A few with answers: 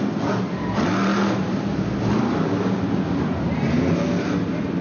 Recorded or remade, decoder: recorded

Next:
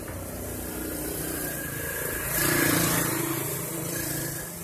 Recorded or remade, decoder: remade, vocoder, BigVGAN v2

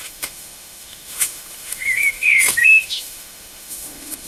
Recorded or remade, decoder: remade, autoencoder, DAC-VAE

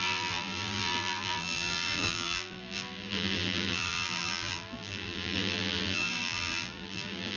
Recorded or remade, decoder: remade, vocoder, BigVGAN v2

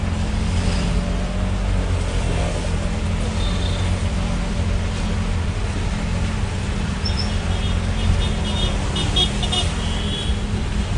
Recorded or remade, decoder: recorded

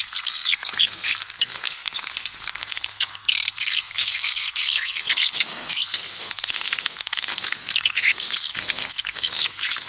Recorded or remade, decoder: remade, codec, SNAC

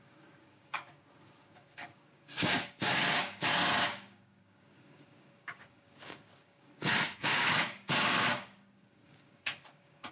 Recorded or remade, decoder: remade, codec, DAC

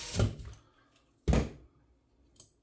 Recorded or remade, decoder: recorded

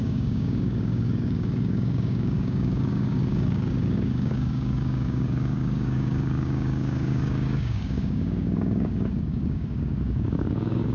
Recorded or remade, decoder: remade, codec, DAC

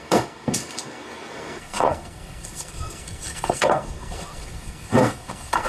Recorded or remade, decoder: remade, codec, SNAC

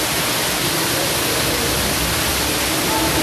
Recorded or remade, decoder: recorded